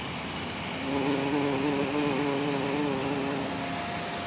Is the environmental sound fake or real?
real